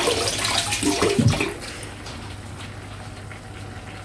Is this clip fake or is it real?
real